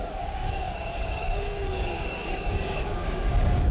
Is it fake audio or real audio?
fake